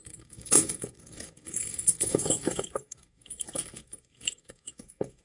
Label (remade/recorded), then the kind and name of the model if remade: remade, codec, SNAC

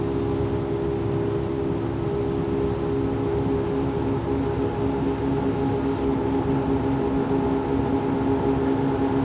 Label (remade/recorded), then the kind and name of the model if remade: recorded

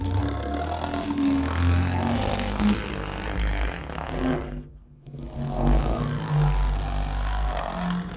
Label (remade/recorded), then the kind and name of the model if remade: remade, codec, SNAC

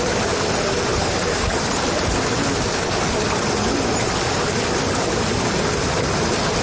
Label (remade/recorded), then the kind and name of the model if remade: recorded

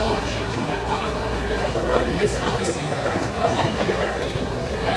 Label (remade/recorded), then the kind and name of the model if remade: remade, codec, SNAC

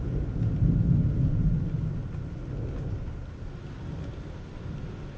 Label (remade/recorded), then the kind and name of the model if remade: recorded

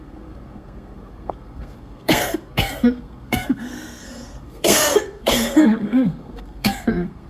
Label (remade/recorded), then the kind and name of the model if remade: remade, codec, SNAC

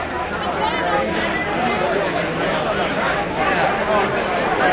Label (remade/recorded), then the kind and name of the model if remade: recorded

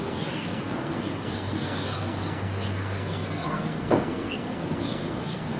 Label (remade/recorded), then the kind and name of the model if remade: remade, codec, SNAC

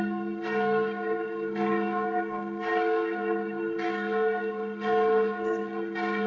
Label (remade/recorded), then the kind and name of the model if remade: remade, codec, SNAC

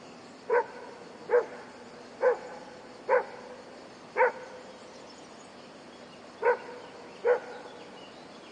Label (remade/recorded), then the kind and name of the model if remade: recorded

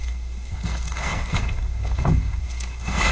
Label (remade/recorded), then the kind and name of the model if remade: remade, codec, SNAC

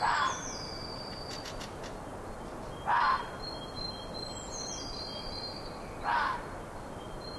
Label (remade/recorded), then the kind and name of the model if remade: recorded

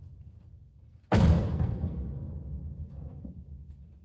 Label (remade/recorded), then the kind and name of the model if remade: remade, codec, SNAC